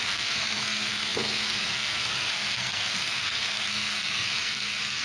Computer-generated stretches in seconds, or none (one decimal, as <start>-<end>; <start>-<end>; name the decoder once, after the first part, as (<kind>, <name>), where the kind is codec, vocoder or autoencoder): 0.0-5.0 (codec, SNAC)